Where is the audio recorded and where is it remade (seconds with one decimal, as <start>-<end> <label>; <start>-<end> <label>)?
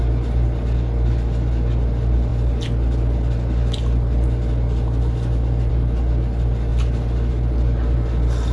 0.0-6.7 remade; 6.7-7.3 recorded; 7.3-8.5 remade